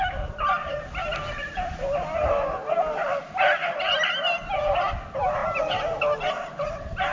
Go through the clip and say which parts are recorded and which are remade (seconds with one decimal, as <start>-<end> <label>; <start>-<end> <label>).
0.0-7.1 recorded